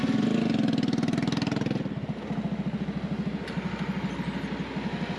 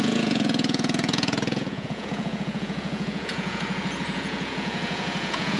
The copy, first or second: second